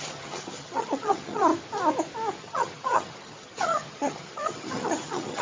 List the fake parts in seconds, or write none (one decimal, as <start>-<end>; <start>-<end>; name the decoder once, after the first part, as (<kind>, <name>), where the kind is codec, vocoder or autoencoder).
0.0-1.5 (vocoder, HiFi-GAN); 2.4-5.4